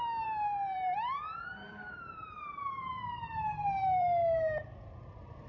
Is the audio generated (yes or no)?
yes